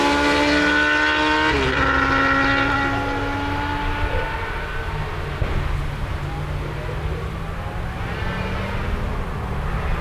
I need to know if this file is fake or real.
real